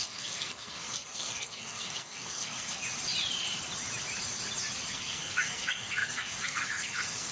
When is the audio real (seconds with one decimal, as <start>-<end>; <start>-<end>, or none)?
2.8-4.9